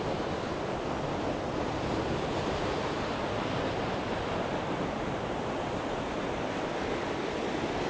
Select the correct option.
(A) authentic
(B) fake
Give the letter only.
A